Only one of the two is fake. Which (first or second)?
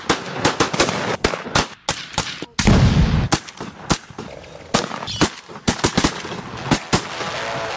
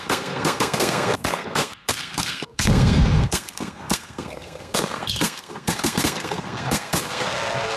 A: second